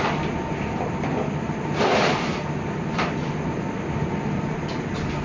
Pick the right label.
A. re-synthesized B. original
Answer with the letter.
B